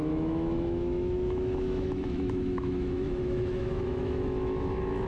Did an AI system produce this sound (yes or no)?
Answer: yes